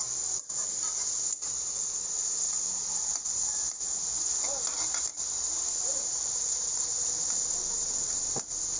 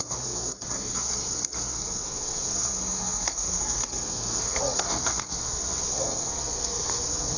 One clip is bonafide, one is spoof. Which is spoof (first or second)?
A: second